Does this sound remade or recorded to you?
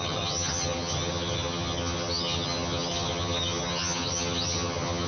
remade